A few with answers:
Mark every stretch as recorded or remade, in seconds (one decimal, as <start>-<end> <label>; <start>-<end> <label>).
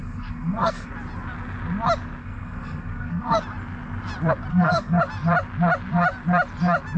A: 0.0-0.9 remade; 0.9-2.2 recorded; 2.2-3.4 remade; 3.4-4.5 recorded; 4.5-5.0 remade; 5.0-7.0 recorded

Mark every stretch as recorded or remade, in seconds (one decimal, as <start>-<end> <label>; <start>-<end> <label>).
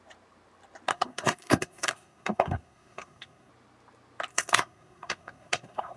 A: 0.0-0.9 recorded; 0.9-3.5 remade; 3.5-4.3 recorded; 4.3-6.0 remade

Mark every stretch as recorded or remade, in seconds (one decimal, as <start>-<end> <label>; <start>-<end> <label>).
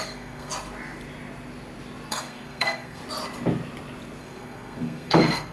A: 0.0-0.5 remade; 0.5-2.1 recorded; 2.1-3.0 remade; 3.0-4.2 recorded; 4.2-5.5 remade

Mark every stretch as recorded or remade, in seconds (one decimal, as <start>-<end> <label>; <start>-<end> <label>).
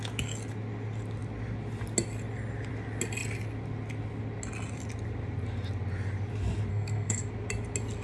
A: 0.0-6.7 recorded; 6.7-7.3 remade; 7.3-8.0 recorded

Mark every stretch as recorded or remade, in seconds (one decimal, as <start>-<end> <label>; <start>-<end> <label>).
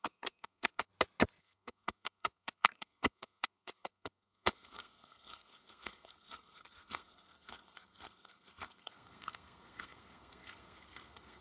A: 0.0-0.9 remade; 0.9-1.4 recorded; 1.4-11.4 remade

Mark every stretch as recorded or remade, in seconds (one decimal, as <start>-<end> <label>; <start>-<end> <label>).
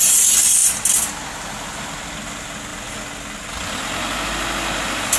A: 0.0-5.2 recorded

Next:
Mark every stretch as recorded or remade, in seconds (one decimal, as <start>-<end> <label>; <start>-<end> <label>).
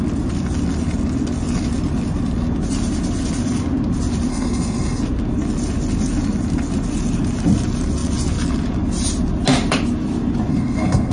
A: 0.0-4.3 recorded; 4.3-5.0 remade; 5.0-10.5 recorded; 10.5-11.1 remade